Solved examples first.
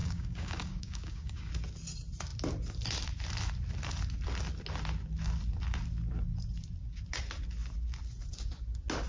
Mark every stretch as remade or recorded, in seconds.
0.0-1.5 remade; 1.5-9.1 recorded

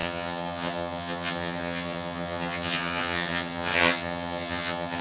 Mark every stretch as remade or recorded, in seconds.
0.0-5.0 remade

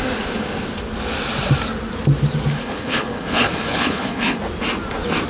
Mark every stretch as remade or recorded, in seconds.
0.0-2.5 recorded; 2.5-4.4 remade; 4.4-5.3 recorded

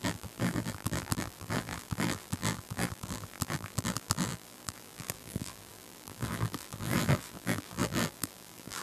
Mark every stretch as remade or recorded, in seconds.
0.0-8.8 remade

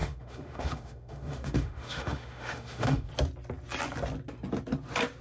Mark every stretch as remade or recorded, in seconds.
0.0-3.1 remade; 3.1-5.2 recorded

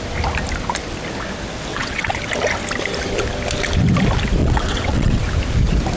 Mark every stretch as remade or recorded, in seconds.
0.0-1.7 recorded; 1.7-2.2 remade; 2.2-4.4 recorded; 4.4-5.2 remade; 5.2-6.0 recorded

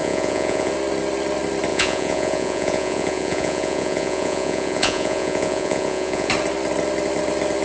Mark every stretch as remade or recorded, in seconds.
0.0-0.7 remade; 0.7-1.7 recorded; 1.7-6.3 remade; 6.3-7.6 recorded